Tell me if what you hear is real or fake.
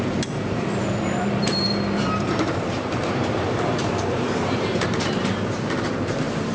fake